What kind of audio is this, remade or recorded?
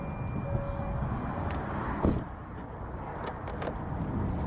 recorded